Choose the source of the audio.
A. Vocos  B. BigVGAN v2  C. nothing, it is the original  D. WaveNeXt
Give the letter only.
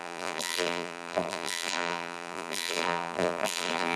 B